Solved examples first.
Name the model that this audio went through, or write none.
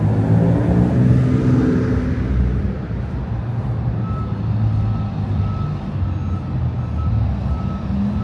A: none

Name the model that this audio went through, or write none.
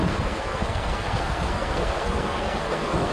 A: codec, SNAC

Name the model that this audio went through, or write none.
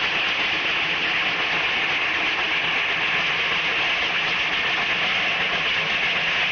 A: none